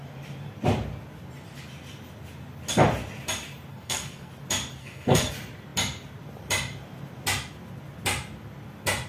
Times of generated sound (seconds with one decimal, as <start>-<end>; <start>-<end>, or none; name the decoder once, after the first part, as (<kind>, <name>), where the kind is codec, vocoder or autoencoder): 3.7-4.3 (codec, SNAC); 4.8-5.3